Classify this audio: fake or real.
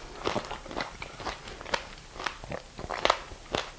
real